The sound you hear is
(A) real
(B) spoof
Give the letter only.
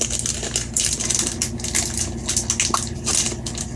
A